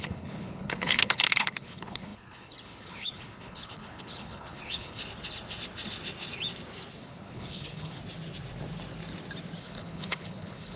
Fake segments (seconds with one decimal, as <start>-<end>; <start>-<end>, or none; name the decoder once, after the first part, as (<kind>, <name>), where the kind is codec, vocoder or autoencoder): 0.0-5.0 (codec, HILCodec); 7.0-8.0; 9.6-10.8